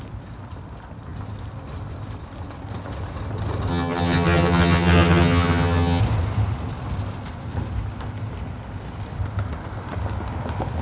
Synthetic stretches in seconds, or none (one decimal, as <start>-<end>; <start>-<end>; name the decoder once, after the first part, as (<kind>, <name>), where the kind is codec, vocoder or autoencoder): 3.7-6.0 (vocoder, HiFi-GAN)